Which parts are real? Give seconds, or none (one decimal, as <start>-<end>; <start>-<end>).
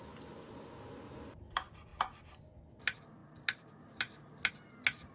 0.0-5.1